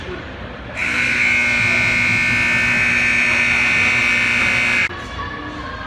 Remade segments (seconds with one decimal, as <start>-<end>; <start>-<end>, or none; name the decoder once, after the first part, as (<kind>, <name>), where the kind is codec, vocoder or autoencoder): none